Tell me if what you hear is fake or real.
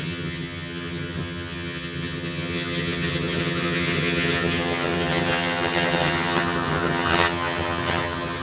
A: fake